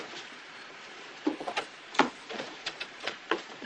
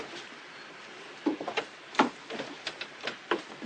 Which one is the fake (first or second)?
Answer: first